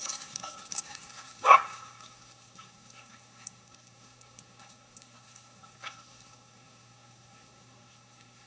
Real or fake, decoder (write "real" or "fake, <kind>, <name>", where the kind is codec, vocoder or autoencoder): fake, codec, SNAC